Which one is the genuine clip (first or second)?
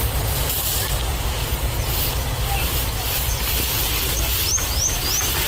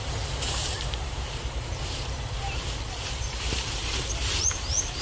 first